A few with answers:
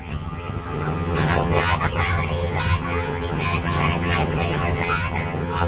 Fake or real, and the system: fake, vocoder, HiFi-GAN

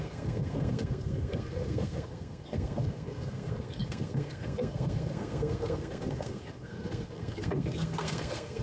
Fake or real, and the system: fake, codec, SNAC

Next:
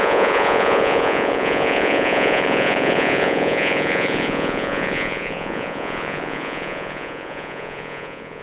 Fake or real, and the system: fake, vocoder, Vocos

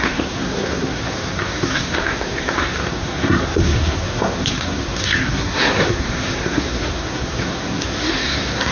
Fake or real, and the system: fake, codec, SNAC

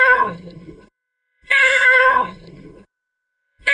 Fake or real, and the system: fake, codec, SNAC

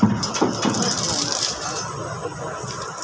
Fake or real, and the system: real